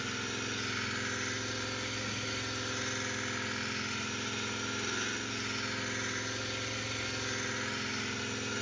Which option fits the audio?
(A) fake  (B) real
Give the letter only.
B